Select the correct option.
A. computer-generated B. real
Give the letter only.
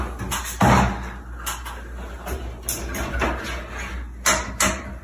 B